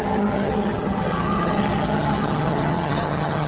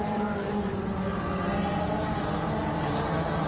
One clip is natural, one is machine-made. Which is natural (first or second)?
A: second